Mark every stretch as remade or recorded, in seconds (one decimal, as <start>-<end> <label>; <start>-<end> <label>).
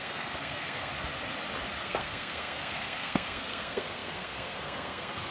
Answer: 0.0-0.9 remade; 0.9-1.8 recorded; 1.8-5.3 remade